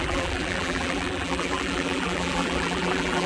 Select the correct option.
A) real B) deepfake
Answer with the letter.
B